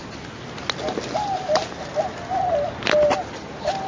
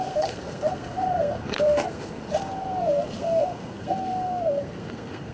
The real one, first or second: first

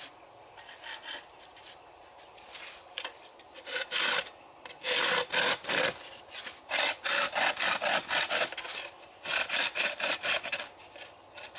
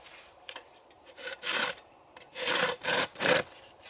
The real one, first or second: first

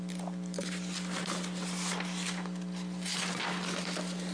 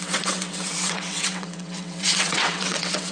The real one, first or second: first